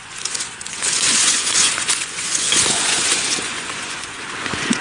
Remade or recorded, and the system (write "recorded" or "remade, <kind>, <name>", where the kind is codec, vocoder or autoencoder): remade, vocoder, Vocos